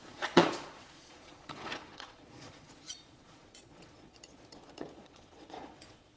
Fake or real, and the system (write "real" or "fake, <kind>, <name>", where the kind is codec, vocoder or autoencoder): fake, vocoder, Vocos